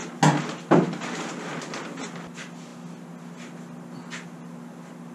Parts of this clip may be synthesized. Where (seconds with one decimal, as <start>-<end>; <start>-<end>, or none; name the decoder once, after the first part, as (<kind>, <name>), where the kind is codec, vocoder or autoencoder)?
none